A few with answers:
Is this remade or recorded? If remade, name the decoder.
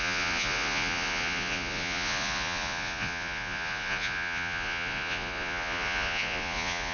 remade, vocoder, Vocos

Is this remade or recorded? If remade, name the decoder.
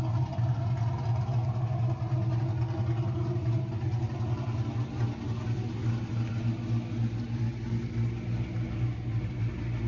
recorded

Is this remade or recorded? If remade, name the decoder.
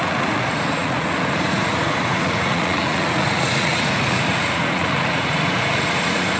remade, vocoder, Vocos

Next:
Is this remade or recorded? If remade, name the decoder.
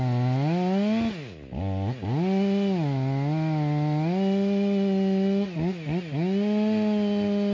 recorded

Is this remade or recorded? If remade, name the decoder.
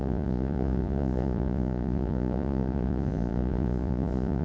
remade, vocoder, Vocos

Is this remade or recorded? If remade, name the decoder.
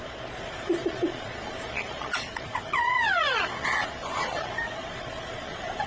remade, vocoder, Vocos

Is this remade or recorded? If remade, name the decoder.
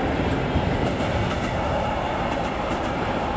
recorded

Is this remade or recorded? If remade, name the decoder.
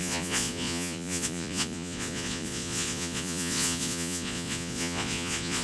remade, vocoder, Vocos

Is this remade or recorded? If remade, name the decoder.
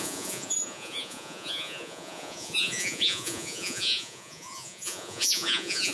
remade, vocoder, Vocos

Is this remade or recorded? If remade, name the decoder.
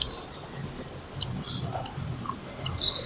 recorded